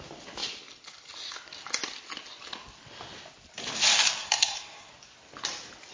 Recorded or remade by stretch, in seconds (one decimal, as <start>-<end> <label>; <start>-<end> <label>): 0.0-4.2 recorded; 4.2-4.9 remade; 4.9-5.9 recorded